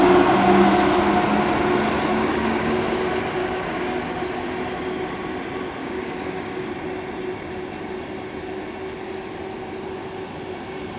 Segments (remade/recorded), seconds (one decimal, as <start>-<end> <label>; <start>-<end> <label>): 0.0-2.1 recorded; 2.1-2.8 remade; 2.8-3.4 recorded; 3.4-4.0 remade; 4.0-5.8 recorded; 5.8-6.7 remade; 6.7-11.0 recorded